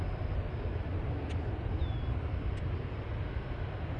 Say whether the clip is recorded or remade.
recorded